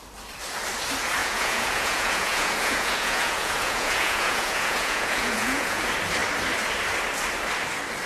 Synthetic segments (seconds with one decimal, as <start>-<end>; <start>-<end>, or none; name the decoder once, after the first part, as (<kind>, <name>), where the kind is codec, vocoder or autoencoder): 1.2-5.8 (vocoder, Vocos)